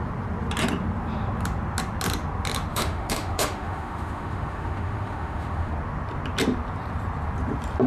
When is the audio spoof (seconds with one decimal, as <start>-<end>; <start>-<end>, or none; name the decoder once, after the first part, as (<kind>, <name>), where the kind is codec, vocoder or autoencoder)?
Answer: 2.7-5.7 (autoencoder, DAC-VAE)